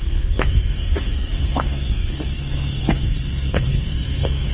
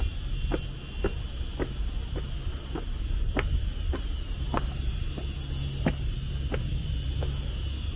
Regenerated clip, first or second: first